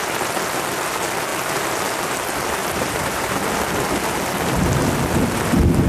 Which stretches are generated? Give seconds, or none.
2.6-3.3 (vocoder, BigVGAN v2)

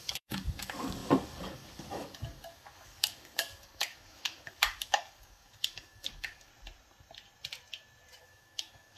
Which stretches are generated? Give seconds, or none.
0.0-6.5 (codec, DAC); 8.2-9.0

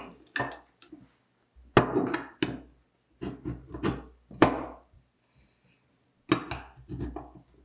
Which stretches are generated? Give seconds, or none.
4.4-5.6 (vocoder, BigVGAN v2)

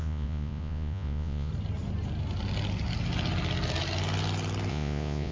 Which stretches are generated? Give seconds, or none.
0.0-1.5 (vocoder, Vocos); 4.7-5.3

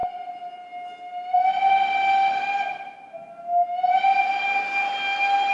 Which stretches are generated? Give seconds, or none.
4.1-5.5 (vocoder, BigVGAN v2)

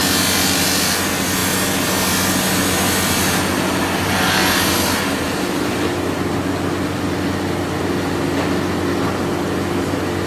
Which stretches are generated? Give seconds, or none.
none

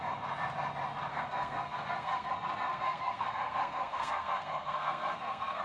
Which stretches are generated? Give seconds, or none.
1.1-2.3 (codec, SNAC); 2.7-5.6

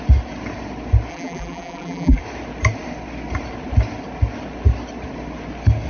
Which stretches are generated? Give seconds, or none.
1.1-2.2 (vocoder, BigVGAN v2)